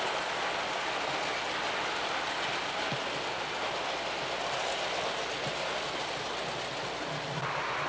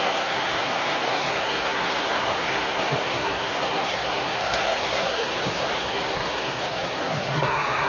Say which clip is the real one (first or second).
first